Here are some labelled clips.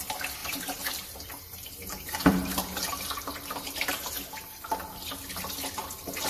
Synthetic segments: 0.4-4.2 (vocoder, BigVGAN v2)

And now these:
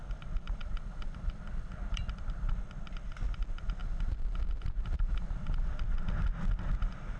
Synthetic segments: 0.6-2.5 (vocoder, BigVGAN v2); 3.8-5.7

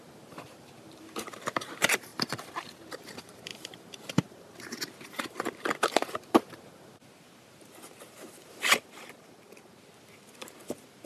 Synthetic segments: 0.0-2.1 (vocoder, BigVGAN v2); 2.8-11.0

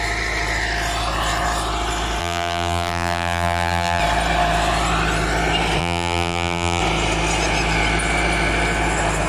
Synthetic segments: 2.2-4.0 (vocoder, BigVGAN v2); 5.8-6.8

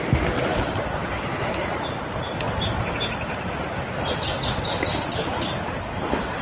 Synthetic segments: 0.5-1.1 (vocoder, BigVGAN v2)

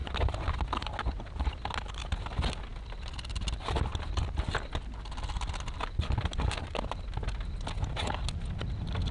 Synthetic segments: none

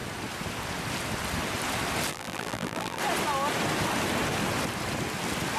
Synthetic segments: 2.1-3.0 (vocoder, BigVGAN v2)

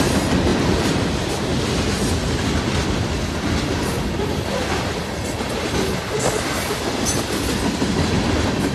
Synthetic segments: 0.5-2.7 (vocoder, BigVGAN v2)